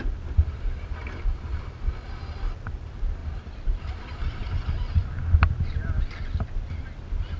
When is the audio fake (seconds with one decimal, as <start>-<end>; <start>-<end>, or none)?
none